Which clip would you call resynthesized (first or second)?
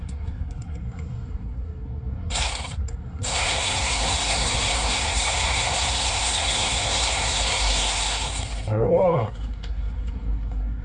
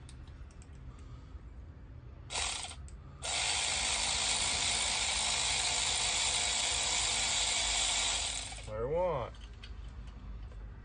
first